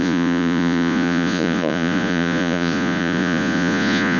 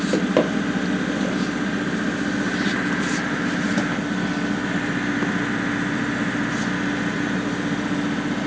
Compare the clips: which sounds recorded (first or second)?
second